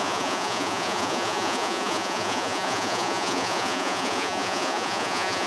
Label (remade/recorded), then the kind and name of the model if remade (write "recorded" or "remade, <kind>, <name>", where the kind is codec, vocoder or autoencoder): remade, vocoder, Vocos